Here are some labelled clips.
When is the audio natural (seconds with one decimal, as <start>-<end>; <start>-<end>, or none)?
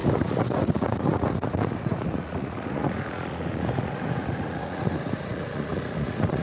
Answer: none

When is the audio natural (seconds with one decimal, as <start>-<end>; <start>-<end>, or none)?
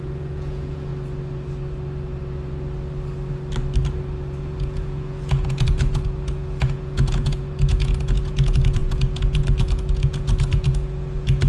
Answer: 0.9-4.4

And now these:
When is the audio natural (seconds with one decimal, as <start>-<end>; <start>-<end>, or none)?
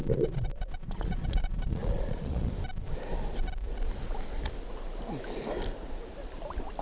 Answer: 2.5-6.8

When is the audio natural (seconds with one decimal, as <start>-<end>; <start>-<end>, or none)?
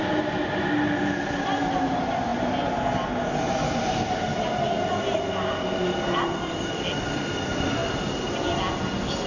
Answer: 0.0-9.3